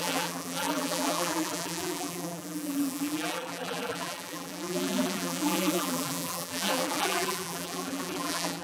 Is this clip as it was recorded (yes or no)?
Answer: no